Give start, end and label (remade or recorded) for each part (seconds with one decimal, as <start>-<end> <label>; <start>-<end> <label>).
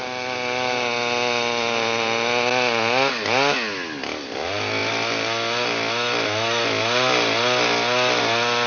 0.0-8.7 recorded